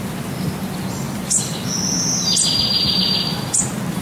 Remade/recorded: recorded